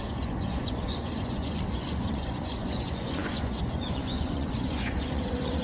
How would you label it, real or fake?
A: fake